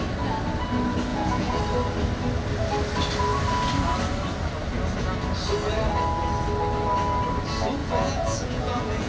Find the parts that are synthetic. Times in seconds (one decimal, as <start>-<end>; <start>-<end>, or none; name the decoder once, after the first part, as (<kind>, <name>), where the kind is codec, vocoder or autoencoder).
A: 1.1-1.6 (vocoder, Vocos); 7.8-9.1